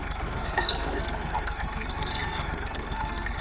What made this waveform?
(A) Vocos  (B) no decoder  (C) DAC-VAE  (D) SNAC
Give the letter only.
D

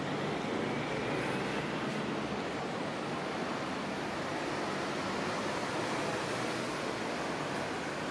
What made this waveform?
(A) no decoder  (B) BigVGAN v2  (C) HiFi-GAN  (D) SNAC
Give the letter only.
A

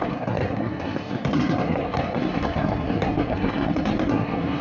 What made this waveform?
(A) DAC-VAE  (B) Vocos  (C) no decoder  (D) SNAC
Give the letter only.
D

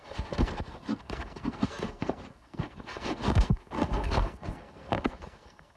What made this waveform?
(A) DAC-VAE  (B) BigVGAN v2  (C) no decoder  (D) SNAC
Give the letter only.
D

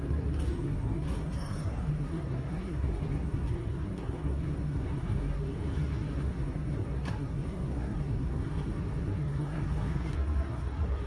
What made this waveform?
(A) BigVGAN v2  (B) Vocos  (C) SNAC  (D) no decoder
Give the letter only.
C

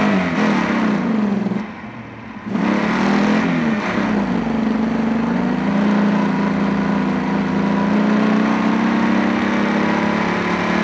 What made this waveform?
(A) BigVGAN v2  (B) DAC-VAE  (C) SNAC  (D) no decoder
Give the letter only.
D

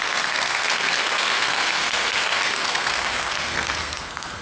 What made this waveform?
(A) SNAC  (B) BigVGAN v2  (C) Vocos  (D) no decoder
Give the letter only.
A